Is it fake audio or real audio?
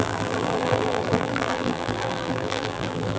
fake